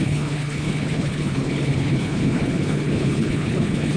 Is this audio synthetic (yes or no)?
yes